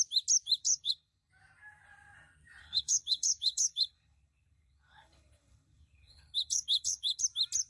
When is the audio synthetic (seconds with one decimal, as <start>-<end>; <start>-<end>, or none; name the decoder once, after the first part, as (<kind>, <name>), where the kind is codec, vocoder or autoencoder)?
0.6-1.3 (codec, HILCodec); 2.6-7.2